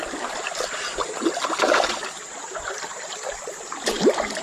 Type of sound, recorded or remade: recorded